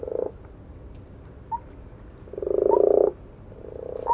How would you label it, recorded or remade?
recorded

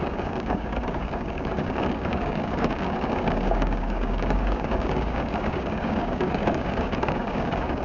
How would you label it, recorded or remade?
remade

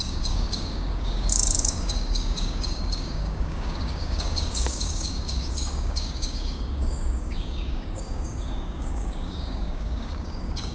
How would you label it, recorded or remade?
remade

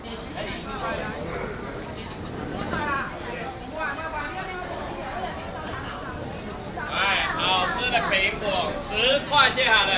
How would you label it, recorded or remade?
recorded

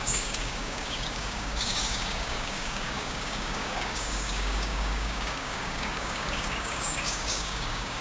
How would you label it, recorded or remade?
remade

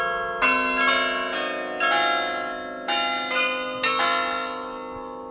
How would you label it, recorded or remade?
recorded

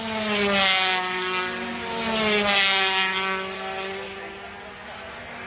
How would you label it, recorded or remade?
recorded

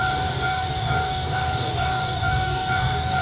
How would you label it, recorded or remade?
remade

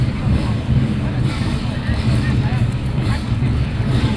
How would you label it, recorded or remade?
remade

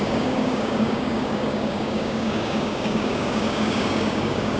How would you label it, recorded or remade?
remade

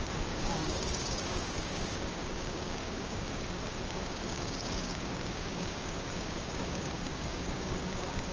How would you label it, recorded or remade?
remade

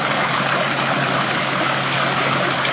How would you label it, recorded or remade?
remade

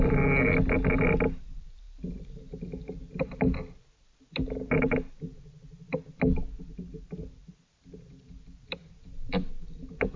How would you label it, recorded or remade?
recorded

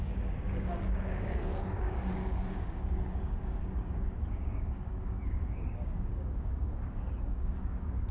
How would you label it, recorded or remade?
remade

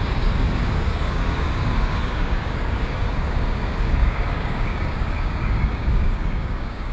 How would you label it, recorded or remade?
remade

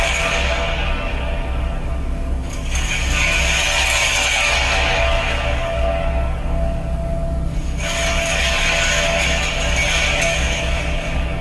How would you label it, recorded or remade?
remade